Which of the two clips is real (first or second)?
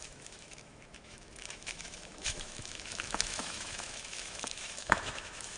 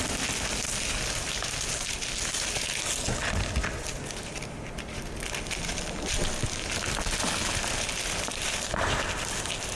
second